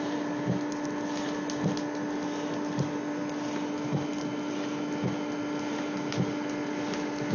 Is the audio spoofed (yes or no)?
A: no